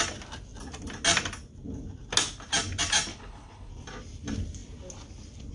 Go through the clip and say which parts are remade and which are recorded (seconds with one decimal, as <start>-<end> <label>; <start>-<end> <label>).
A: 0.0-3.1 recorded; 3.1-3.7 remade; 3.7-5.5 recorded